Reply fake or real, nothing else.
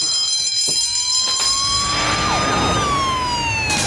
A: real